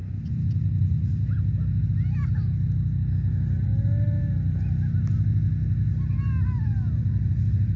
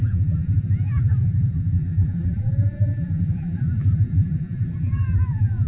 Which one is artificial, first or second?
second